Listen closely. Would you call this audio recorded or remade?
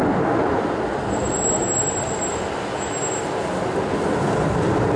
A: recorded